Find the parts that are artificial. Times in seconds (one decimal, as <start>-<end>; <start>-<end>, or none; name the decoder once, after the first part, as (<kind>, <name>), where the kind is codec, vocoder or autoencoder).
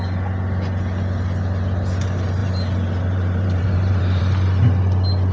2.4-4.2 (vocoder, BigVGAN v2)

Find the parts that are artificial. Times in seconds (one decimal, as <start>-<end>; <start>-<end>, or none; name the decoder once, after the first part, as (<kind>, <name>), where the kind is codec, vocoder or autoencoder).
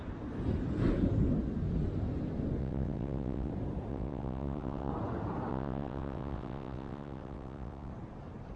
2.6-3.5 (vocoder, WaveNeXt); 3.9-4.9; 5.5-7.9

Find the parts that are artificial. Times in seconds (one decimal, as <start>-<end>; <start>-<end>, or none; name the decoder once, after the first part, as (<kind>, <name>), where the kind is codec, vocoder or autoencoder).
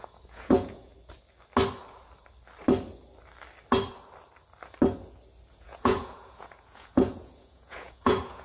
0.0-0.9 (vocoder, Vocos); 5.5-8.4